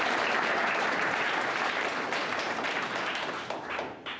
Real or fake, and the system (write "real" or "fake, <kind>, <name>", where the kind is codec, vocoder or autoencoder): fake, vocoder, BigVGAN v2